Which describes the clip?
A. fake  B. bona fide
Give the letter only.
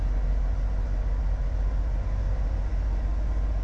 B